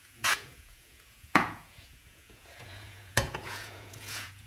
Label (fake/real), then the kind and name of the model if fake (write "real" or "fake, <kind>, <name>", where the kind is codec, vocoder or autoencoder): fake, vocoder, Vocos